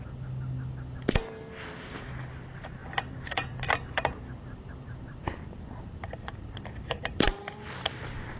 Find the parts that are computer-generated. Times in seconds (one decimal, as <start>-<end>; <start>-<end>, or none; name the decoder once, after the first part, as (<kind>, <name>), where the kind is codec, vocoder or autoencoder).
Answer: 2.8-7.3 (vocoder, BigVGAN v2)